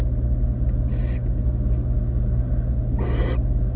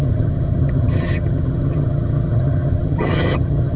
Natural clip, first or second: first